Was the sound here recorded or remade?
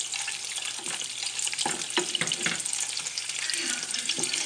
recorded